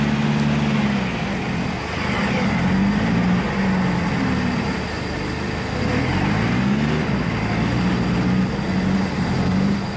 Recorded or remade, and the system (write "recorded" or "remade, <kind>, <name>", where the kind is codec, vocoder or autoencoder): recorded